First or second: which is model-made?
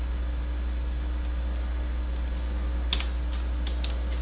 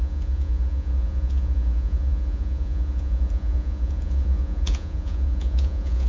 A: second